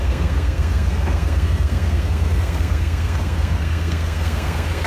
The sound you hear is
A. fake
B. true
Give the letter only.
A